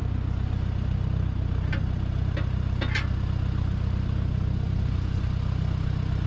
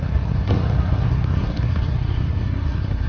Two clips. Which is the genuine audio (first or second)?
first